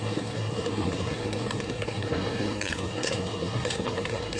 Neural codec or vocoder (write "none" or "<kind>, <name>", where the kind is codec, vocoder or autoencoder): codec, SNAC